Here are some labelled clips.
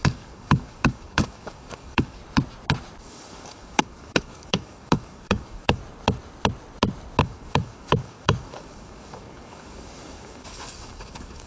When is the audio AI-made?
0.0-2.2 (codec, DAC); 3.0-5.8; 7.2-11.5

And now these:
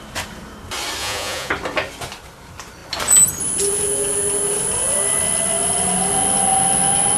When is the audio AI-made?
1.0-1.5 (vocoder, Vocos)

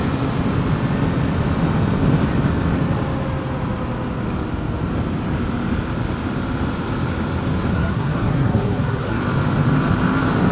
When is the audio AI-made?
7.7-9.2 (codec, SNAC)

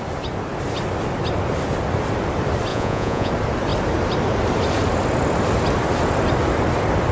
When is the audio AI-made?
2.7-3.3 (vocoder, Vocos)

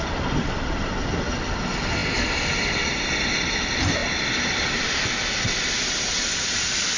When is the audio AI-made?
none

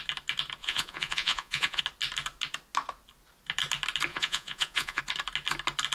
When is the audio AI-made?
0.6-1.8 (vocoder, Vocos); 4.1-5.0